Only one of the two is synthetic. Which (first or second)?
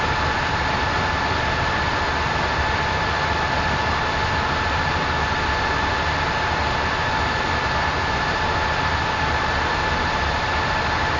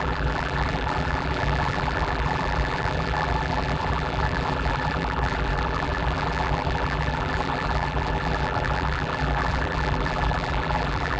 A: second